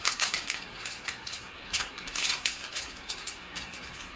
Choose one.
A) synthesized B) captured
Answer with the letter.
A